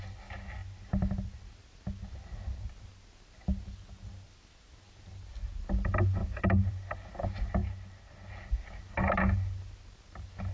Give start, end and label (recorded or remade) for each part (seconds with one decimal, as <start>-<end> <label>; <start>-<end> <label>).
0.0-10.5 recorded